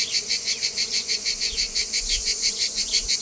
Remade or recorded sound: remade